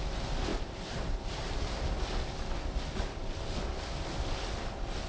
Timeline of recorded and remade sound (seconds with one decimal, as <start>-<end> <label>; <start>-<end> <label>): 0.0-5.1 recorded